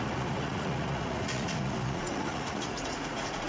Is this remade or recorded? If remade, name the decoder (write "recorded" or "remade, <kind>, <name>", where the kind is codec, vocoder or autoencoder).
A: remade, vocoder, Vocos